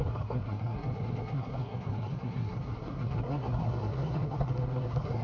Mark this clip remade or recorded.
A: remade